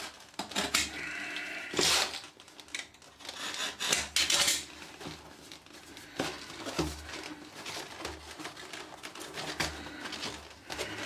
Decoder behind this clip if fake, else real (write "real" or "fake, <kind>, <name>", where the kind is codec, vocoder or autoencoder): real